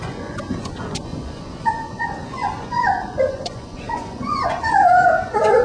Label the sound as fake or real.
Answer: fake